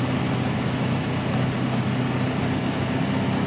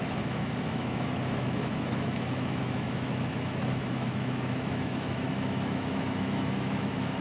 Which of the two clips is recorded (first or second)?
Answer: first